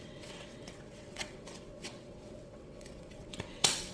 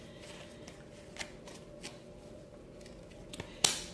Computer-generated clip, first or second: first